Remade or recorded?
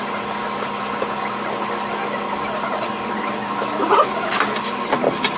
recorded